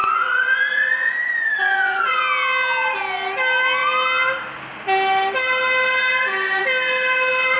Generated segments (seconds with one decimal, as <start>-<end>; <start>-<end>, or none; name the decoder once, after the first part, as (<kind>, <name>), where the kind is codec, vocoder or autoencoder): 0.0-2.2 (vocoder, Vocos)